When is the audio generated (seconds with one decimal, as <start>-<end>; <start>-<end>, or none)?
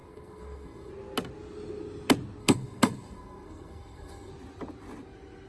0.0-0.9; 2.4-4.3